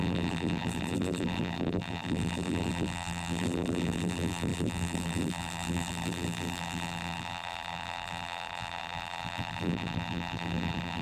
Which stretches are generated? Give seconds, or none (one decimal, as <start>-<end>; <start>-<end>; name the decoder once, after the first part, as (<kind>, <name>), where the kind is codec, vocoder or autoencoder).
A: 0.0-11.0 (vocoder, BigVGAN v2)